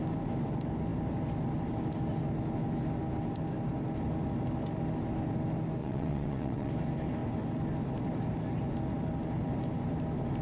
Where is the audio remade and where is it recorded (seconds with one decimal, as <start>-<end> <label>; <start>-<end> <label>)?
0.0-5.8 recorded; 5.8-6.7 remade; 6.7-10.4 recorded